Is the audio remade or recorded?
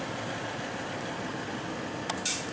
recorded